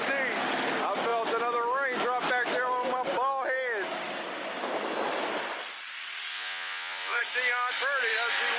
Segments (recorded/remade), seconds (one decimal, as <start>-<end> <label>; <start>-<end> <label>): 0.0-6.3 recorded; 6.3-7.2 remade; 7.2-8.6 recorded